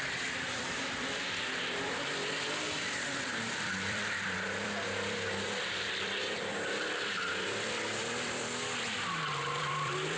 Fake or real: fake